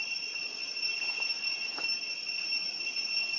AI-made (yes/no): no